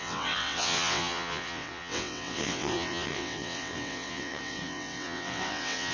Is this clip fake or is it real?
fake